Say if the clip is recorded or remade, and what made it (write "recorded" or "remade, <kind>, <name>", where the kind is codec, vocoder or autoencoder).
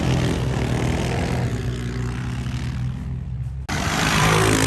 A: recorded